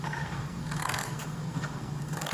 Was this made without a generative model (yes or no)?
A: no